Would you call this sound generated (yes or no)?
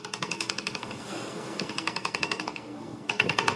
yes